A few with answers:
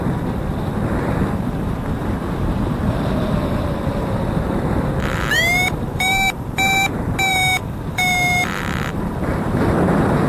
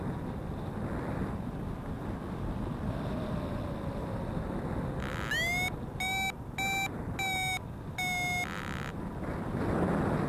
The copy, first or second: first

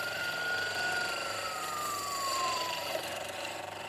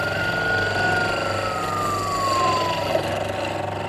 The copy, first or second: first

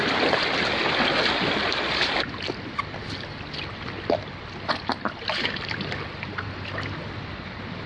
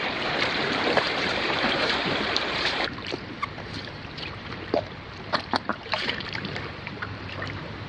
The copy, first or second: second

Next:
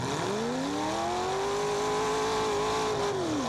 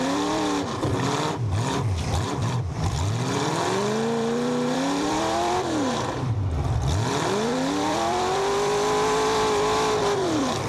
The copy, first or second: second